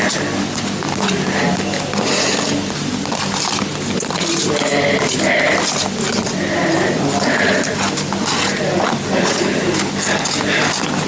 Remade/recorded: recorded